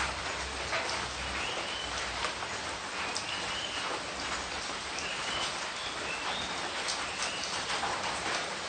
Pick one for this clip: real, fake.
real